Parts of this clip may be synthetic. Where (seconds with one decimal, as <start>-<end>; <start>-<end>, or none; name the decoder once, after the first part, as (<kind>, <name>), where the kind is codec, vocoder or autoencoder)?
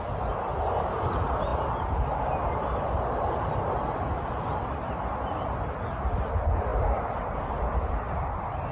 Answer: none